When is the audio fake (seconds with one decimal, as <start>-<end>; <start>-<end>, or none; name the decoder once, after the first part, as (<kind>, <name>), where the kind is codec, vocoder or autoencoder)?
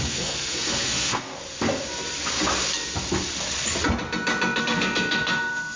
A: 0.0-1.3 (codec, SNAC); 4.6-5.8